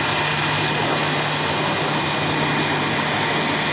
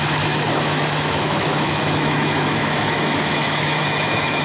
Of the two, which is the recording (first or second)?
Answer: first